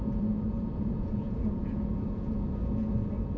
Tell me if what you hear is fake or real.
fake